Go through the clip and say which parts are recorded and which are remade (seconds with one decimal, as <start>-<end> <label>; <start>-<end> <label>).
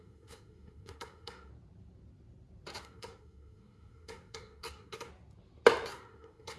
0.0-1.5 remade; 1.5-2.8 recorded; 2.8-5.1 remade; 5.1-5.9 recorded; 5.9-6.6 remade